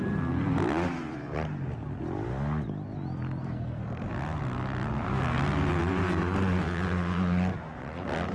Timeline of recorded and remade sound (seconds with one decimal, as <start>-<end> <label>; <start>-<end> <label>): 0.0-3.4 recorded; 3.4-4.1 remade; 4.1-8.3 recorded